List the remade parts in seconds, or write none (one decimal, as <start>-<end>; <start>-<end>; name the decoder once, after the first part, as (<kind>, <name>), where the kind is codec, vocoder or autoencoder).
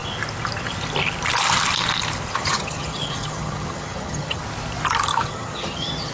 2.3-4.4 (vocoder, HiFi-GAN); 5.1-6.1